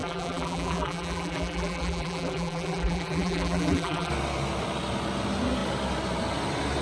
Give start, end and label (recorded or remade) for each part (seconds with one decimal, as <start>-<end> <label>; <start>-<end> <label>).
0.0-4.1 remade; 4.1-6.8 recorded